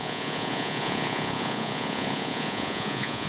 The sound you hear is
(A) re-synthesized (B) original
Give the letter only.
A